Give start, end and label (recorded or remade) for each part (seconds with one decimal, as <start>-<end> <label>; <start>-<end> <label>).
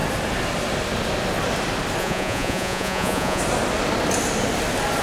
0.0-2.0 recorded; 2.0-3.4 remade; 3.4-5.0 recorded